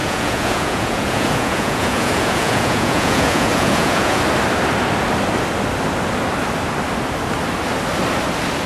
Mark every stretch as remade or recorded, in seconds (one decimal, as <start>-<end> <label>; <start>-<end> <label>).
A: 0.0-4.2 remade; 4.2-8.7 recorded